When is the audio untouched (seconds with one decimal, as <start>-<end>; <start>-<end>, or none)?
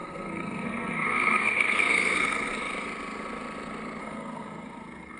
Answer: 2.6-4.0